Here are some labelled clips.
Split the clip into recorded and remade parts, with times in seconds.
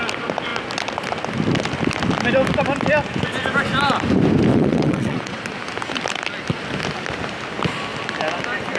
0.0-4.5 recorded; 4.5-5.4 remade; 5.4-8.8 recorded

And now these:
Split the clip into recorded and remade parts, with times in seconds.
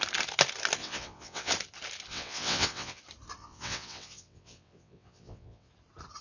0.0-0.8 recorded; 0.8-1.5 remade; 1.5-2.1 recorded; 2.1-3.0 remade; 3.0-3.4 recorded; 3.4-5.7 remade; 5.7-6.2 recorded